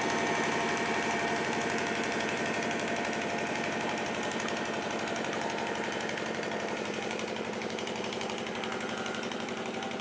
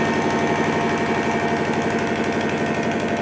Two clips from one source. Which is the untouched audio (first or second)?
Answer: second